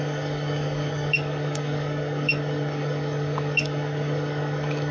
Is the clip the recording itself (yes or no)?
no